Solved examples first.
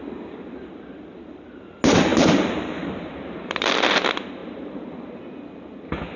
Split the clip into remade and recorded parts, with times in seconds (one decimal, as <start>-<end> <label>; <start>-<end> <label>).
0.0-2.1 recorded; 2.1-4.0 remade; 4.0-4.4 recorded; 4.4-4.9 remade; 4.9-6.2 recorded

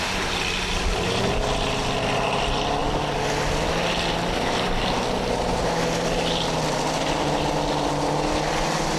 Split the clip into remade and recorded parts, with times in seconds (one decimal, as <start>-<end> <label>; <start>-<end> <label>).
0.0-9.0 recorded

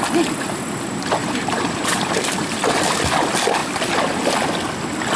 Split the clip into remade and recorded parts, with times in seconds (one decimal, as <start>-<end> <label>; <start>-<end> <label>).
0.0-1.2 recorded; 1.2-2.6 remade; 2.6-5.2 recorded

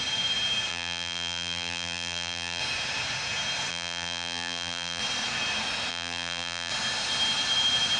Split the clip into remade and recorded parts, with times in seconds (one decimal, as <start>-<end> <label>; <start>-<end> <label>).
0.0-0.7 recorded; 0.7-2.6 remade; 2.6-3.7 recorded; 3.7-5.0 remade; 5.0-5.9 recorded; 5.9-6.7 remade; 6.7-8.0 recorded

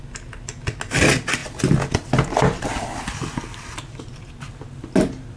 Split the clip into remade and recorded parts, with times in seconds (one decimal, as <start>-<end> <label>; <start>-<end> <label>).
0.0-5.4 recorded